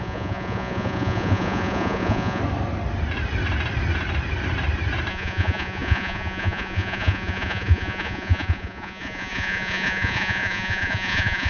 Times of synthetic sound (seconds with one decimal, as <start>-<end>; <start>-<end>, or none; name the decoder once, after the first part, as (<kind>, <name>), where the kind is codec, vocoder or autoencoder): 0.0-2.4 (vocoder, Vocos); 5.1-11.5